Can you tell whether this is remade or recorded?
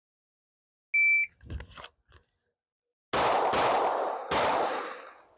recorded